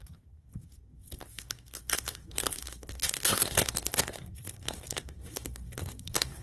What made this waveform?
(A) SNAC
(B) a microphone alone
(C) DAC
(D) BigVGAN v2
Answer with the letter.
A